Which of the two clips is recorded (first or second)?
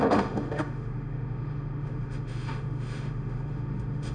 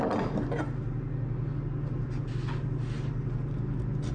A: second